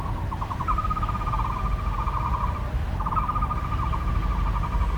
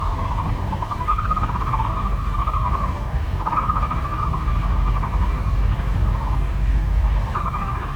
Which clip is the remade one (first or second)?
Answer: second